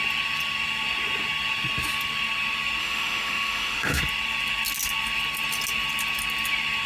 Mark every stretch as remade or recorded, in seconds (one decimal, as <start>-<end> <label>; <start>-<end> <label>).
0.0-2.8 recorded; 2.8-4.0 remade; 4.0-6.9 recorded